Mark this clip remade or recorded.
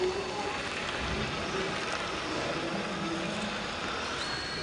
recorded